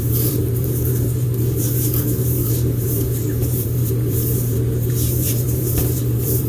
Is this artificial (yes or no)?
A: yes